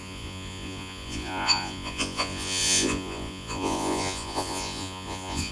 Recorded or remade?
remade